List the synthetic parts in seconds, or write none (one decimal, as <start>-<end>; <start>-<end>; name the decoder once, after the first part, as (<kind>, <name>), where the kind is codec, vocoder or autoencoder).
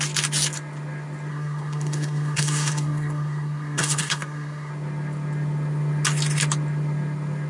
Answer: 1.3-4.7 (codec, SNAC)